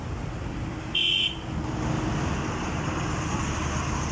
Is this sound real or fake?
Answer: real